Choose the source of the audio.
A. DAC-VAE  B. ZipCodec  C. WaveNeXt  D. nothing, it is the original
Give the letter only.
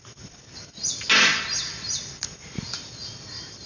D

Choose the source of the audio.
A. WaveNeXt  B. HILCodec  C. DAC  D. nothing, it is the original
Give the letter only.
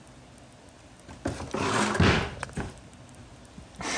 D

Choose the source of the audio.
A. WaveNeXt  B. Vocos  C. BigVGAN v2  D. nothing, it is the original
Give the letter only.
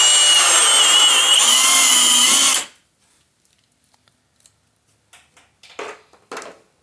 D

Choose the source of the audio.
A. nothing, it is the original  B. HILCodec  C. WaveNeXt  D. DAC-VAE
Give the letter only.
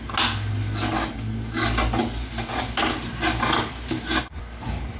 A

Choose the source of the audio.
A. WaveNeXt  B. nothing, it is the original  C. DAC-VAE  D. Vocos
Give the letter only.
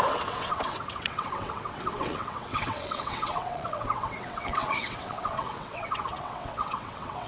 A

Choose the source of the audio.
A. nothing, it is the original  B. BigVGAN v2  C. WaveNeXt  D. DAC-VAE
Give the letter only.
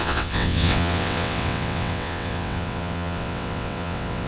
C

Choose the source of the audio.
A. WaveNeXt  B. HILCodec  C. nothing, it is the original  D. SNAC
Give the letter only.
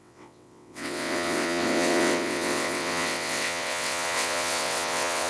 A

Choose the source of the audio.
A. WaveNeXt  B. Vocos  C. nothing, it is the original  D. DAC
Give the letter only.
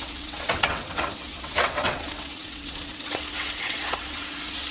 A